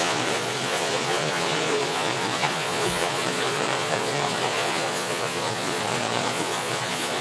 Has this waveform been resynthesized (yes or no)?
yes